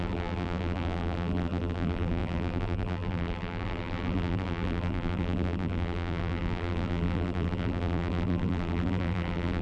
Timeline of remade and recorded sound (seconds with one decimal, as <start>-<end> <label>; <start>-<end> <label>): 0.0-9.6 remade